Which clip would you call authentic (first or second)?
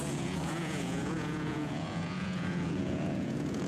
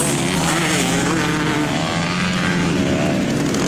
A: second